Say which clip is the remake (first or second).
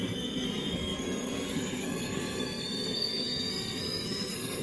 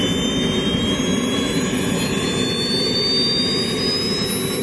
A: first